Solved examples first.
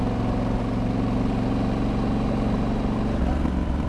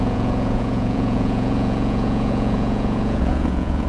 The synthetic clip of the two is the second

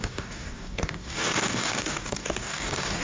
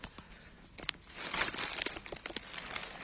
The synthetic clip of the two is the first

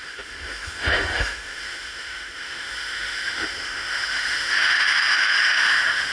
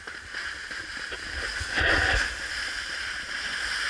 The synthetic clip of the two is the first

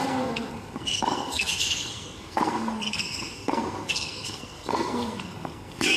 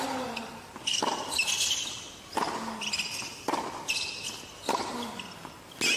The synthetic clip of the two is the first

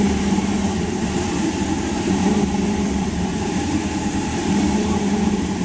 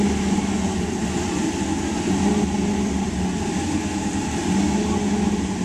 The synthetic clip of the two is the first